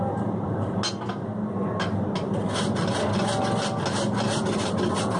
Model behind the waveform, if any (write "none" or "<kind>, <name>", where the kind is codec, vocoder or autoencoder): none